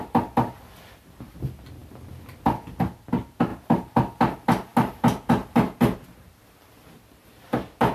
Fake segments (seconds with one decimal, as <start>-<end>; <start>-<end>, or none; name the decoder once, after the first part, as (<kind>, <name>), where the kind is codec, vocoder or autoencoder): 3.5-4.2 (vocoder, BigVGAN v2)